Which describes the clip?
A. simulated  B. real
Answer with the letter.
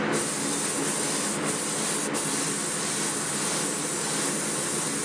B